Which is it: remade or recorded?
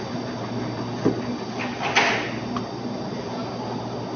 recorded